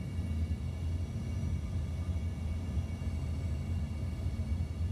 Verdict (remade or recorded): recorded